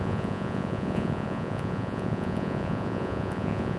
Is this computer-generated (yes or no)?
yes